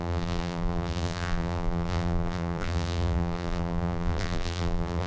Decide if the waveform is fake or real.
fake